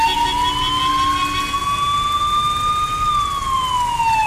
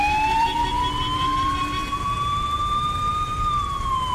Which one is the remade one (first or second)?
second